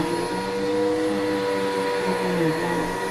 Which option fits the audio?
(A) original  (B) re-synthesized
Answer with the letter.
A